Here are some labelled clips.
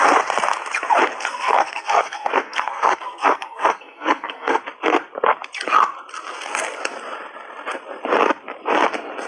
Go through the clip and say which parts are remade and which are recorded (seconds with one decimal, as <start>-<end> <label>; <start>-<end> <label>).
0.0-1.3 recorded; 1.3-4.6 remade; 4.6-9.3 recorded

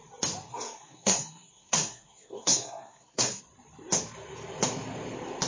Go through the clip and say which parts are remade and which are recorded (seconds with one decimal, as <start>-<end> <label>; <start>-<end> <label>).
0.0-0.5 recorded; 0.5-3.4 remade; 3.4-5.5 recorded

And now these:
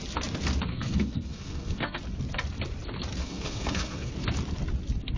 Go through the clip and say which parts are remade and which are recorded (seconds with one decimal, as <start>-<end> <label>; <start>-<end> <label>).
0.0-0.7 recorded; 0.7-2.0 remade; 2.0-3.2 recorded; 3.2-4.1 remade; 4.1-5.2 recorded

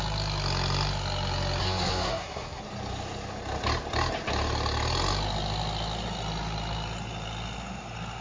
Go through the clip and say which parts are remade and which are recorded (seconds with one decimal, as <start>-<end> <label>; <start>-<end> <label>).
0.0-1.6 recorded; 1.6-2.6 remade; 2.6-8.2 recorded

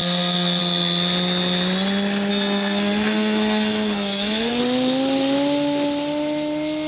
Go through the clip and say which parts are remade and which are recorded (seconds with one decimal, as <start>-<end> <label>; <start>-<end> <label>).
0.0-0.6 remade; 0.6-2.3 recorded; 2.3-4.6 remade; 4.6-6.9 recorded

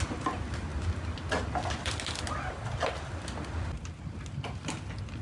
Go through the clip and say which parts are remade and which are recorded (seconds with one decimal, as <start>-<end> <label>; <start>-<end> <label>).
0.0-5.2 recorded